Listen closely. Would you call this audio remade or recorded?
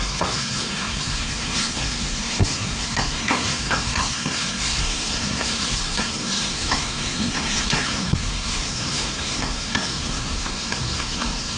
remade